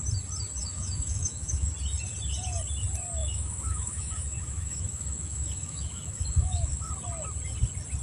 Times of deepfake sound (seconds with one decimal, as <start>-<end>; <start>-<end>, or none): 0.6-1.7; 3.2-6.9